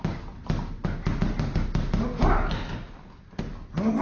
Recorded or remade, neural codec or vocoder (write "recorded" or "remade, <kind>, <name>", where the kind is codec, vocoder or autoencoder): recorded